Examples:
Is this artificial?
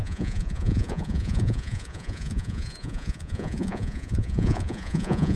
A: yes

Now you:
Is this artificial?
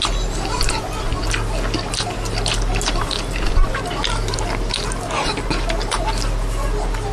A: no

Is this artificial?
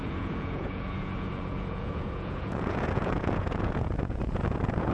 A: yes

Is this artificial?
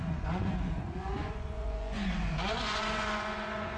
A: yes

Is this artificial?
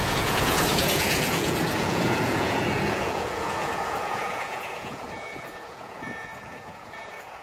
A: yes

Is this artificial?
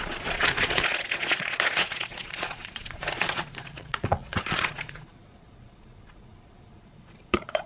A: yes